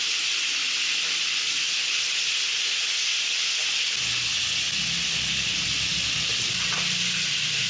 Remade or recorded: recorded